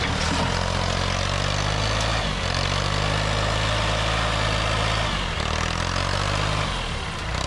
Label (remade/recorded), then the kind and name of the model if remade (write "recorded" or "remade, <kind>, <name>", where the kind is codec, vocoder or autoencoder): recorded